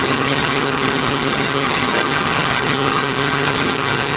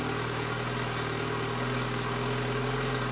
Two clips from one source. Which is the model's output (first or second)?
first